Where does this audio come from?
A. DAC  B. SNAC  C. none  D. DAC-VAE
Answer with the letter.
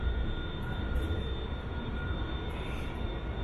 C